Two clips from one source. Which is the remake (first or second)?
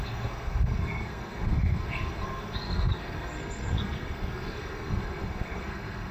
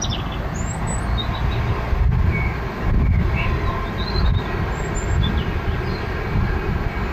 first